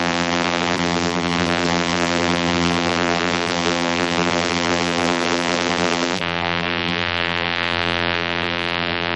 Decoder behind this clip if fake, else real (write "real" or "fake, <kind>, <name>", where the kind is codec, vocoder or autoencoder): fake, vocoder, BigVGAN v2